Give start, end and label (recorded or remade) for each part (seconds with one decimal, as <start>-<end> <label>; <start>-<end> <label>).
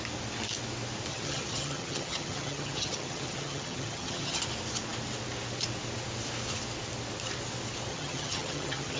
0.0-1.1 recorded; 1.1-4.4 remade; 4.4-7.9 recorded; 7.9-9.0 remade